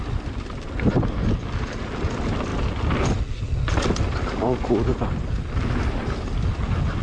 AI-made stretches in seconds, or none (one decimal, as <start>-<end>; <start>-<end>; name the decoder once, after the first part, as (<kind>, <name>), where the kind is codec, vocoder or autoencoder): none